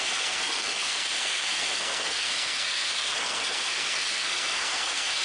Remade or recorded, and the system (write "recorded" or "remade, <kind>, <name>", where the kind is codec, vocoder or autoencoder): remade, codec, SNAC